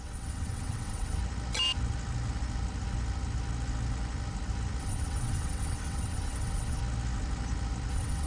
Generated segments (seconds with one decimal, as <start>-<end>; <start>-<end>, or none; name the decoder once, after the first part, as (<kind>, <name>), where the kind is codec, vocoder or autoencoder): 0.0-1.2 (vocoder, WaveNeXt); 4.8-6.8; 7.9-8.3

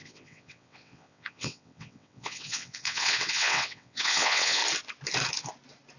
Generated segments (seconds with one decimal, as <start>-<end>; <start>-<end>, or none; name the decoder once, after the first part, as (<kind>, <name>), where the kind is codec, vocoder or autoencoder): 0.0-4.6 (vocoder, WaveNeXt)

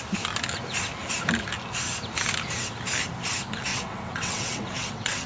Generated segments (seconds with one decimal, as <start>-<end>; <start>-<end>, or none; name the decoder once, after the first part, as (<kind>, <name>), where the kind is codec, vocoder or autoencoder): 3.7-5.3 (vocoder, WaveNeXt)

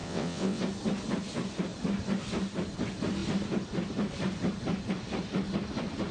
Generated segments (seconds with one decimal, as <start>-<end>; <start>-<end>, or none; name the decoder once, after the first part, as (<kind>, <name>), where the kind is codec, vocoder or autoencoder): 0.0-0.6 (vocoder, WaveNeXt)

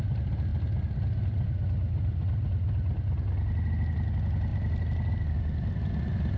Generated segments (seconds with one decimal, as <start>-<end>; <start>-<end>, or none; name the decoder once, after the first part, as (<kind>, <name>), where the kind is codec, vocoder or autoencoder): none